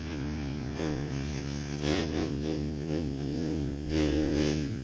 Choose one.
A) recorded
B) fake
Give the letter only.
B